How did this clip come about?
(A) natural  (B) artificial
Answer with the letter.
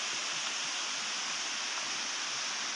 A